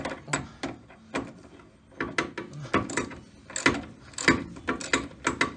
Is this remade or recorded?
recorded